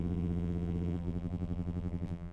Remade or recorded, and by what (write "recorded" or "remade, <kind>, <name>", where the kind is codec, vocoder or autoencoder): remade, vocoder, BigVGAN v2